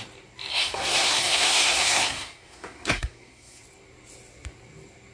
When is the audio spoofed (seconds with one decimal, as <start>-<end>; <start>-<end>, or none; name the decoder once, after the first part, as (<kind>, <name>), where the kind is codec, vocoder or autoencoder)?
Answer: 0.5-3.6 (codec, SNAC)